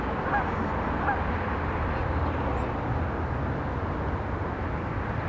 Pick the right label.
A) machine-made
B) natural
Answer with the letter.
B